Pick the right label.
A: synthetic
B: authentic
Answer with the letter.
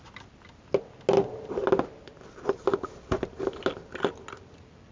B